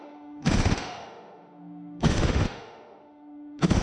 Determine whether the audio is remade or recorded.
remade